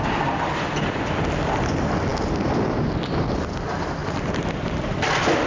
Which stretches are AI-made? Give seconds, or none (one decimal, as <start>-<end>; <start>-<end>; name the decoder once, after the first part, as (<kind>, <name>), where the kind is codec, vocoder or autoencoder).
none